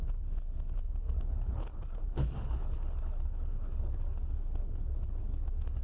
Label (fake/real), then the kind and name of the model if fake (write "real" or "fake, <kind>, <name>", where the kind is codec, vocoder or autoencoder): fake, codec, HILCodec